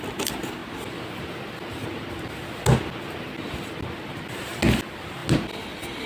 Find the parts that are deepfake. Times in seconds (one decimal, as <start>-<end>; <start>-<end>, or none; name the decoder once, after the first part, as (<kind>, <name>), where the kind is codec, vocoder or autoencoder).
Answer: none